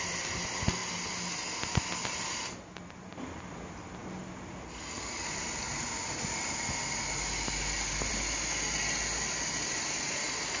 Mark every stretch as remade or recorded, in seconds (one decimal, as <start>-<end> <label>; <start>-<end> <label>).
0.0-10.6 recorded